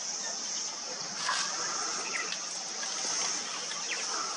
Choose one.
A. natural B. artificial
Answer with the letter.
A